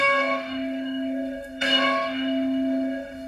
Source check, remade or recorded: remade